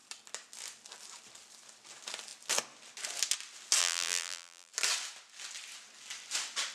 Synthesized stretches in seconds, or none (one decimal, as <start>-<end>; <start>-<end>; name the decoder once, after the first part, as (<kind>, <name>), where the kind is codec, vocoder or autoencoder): 3.8-4.7 (vocoder, BigVGAN v2)